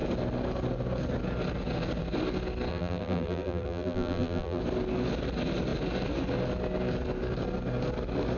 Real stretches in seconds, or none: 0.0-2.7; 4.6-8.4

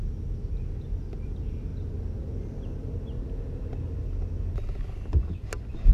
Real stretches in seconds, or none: 0.0-5.9

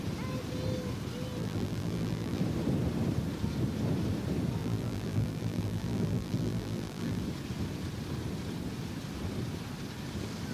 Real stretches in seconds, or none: 0.0-1.4; 2.4-4.6; 7.2-10.5